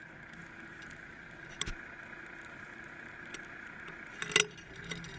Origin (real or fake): real